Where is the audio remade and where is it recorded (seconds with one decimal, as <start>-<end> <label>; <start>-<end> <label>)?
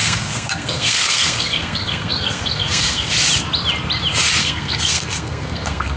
0.0-3.1 remade; 3.1-4.4 recorded; 4.4-6.0 remade